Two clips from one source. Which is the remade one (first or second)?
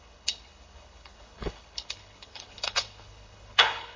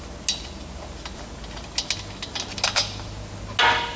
first